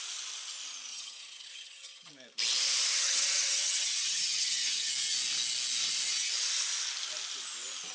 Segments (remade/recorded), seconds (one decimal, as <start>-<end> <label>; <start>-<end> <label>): 0.0-0.9 recorded; 0.9-2.1 remade; 2.1-2.9 recorded; 2.9-4.9 remade; 4.9-7.9 recorded